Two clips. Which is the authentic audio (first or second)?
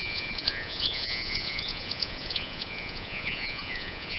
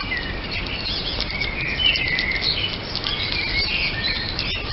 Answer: second